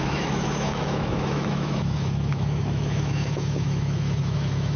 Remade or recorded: remade